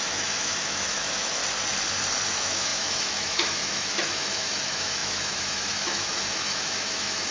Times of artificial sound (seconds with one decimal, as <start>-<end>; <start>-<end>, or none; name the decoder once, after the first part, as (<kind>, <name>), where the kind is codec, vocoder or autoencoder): 0.0-1.4 (autoencoder, DAC-VAE); 2.3-7.3